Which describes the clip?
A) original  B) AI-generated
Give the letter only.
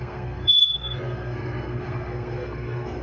B